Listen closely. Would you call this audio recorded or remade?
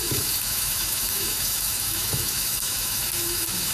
remade